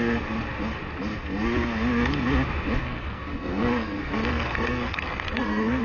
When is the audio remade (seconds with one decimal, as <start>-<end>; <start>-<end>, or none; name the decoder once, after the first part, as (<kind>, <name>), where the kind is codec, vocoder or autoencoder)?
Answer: 2.8-5.8 (codec, SNAC)